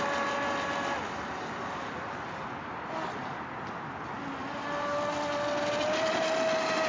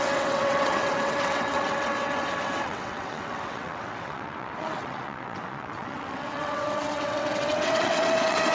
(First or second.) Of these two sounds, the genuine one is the first